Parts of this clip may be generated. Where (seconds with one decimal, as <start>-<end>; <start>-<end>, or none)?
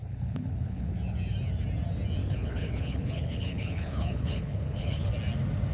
0.0-0.9; 2.2-5.1